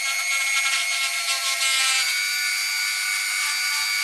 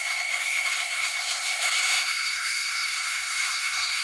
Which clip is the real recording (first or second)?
first